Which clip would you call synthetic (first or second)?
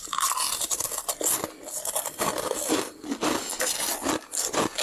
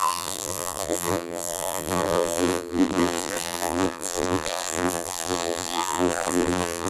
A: second